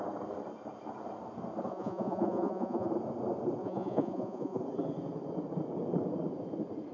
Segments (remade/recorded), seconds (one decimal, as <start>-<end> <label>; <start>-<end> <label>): 0.0-1.7 recorded; 1.7-2.9 remade; 2.9-3.6 recorded; 3.6-4.6 remade; 4.6-6.9 recorded